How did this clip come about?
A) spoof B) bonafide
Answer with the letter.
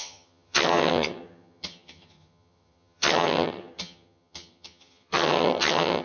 A